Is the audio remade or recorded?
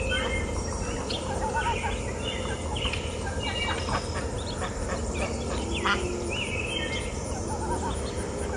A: recorded